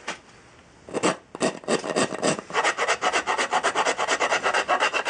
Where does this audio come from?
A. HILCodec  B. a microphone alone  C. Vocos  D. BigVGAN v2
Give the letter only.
B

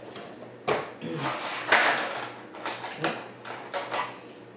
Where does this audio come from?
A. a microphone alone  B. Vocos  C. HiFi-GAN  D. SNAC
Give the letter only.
A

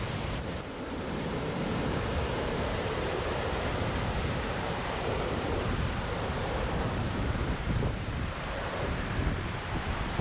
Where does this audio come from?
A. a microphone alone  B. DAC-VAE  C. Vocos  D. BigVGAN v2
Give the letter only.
D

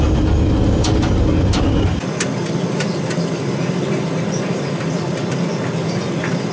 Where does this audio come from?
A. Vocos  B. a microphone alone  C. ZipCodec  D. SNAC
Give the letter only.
B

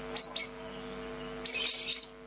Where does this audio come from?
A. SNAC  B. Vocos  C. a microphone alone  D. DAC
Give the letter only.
C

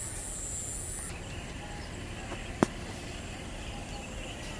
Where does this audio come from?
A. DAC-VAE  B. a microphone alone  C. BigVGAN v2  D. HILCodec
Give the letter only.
B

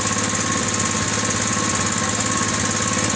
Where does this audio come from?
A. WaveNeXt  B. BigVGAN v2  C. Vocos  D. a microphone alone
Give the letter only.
D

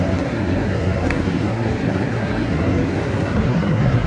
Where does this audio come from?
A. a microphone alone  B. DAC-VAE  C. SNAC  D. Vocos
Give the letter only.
C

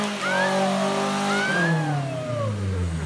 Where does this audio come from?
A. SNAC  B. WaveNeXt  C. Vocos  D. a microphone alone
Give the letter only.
D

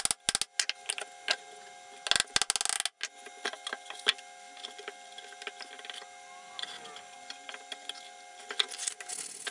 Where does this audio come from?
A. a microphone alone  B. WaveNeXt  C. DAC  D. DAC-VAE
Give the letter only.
A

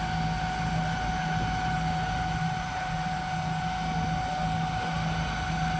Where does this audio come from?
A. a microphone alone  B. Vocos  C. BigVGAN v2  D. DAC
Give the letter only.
A